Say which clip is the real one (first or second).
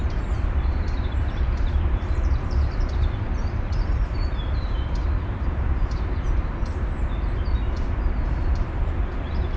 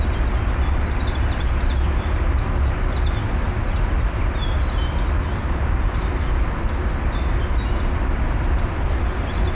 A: second